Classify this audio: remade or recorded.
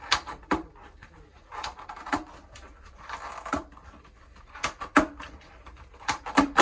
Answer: remade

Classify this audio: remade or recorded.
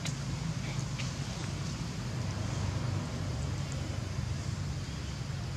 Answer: recorded